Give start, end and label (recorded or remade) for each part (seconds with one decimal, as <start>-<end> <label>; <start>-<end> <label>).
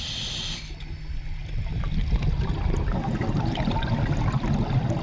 0.0-5.0 recorded